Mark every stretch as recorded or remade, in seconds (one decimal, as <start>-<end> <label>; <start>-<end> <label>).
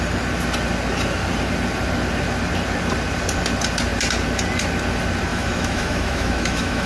0.0-5.3 recorded; 5.3-6.9 remade